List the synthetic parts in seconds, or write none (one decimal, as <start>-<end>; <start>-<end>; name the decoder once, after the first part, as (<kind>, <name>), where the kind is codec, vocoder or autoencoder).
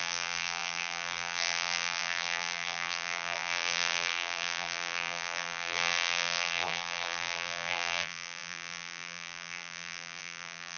0.0-10.8 (vocoder, BigVGAN v2)